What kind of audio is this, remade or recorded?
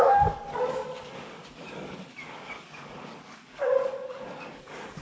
remade